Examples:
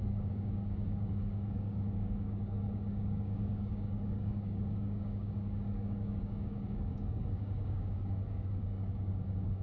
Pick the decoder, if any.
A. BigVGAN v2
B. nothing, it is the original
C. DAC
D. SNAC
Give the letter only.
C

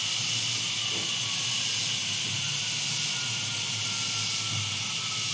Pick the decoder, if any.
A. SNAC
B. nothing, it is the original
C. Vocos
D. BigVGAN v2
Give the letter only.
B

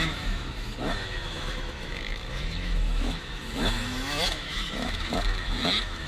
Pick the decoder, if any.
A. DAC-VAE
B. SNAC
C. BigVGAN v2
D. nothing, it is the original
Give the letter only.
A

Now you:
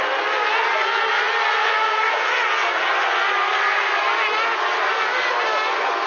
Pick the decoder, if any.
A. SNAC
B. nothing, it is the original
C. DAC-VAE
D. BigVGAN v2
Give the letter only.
B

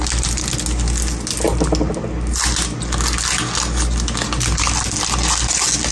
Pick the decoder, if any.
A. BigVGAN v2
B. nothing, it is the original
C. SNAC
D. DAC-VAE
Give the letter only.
B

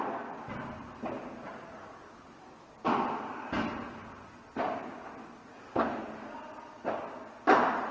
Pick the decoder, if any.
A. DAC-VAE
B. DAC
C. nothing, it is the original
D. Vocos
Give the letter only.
C